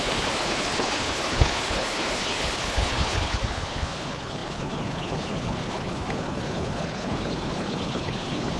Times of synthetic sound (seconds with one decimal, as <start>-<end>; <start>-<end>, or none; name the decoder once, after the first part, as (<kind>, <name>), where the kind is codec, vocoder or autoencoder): 0.0-8.6 (codec, HILCodec)